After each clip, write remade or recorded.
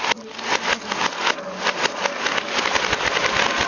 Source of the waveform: recorded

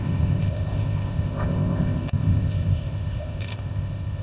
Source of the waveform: remade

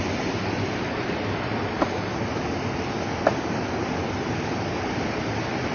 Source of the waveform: recorded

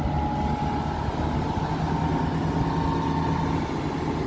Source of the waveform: recorded